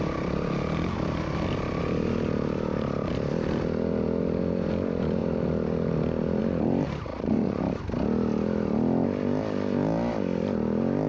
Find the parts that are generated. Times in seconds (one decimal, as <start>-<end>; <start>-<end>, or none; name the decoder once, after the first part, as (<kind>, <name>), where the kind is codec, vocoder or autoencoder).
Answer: 7.1-7.6 (vocoder, Vocos)